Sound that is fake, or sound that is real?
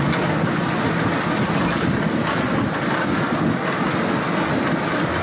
real